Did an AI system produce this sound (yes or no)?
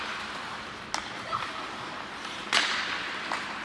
no